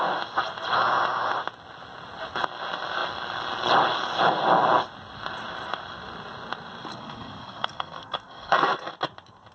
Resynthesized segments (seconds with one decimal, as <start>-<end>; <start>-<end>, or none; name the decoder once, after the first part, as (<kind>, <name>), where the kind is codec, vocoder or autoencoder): 6.9-8.9 (codec, SNAC)